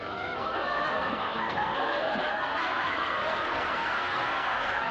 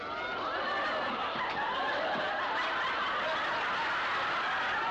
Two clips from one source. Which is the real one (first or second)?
second